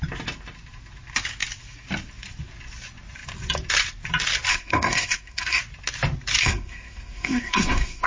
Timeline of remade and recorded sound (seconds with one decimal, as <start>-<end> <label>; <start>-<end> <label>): 0.0-4.5 recorded; 4.5-5.6 remade; 5.6-6.4 recorded; 6.4-8.1 remade

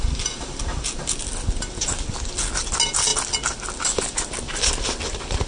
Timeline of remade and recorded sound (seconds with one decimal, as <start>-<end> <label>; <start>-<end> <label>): 0.0-5.5 recorded

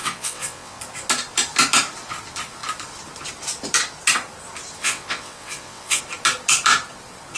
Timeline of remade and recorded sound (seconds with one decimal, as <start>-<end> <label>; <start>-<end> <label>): 0.0-0.8 remade; 0.8-4.8 recorded; 4.8-6.0 remade; 6.0-7.4 recorded

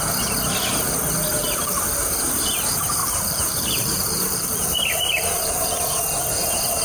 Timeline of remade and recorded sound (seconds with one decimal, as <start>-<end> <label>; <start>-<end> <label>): 0.0-1.4 recorded; 1.4-2.3 remade; 2.3-3.0 recorded; 3.0-6.0 remade; 6.0-6.8 recorded

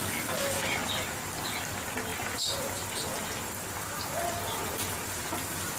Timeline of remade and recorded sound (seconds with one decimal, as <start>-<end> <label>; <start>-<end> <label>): 0.0-5.8 recorded

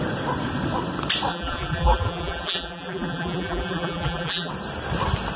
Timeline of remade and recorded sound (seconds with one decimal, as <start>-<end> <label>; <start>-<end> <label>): 0.0-1.3 recorded; 1.3-4.5 remade; 4.5-5.4 recorded

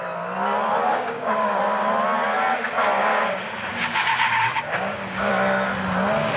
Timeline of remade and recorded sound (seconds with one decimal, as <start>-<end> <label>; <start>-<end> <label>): 0.0-0.9 recorded; 0.9-1.6 remade; 1.6-3.0 recorded; 3.0-5.3 remade; 5.3-6.4 recorded

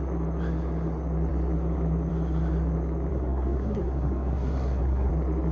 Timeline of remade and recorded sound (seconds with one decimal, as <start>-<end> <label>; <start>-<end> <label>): 0.0-3.1 recorded; 3.1-5.1 remade; 5.1-5.5 recorded